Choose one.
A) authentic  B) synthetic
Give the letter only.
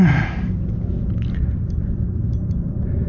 A